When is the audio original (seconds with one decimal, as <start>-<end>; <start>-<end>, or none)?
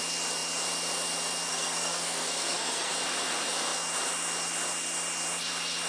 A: 0.0-1.5; 2.9-5.9